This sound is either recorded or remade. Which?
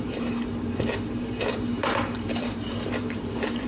remade